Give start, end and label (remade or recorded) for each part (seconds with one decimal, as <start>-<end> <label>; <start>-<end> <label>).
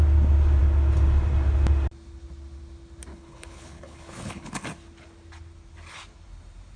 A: 0.0-3.1 recorded; 3.1-4.5 remade; 4.5-6.8 recorded